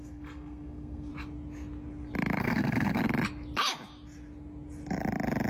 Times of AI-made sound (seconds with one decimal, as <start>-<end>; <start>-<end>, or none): 0.0-1.1; 2.4-3.0